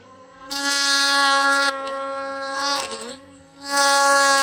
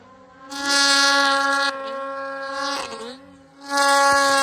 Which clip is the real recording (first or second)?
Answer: second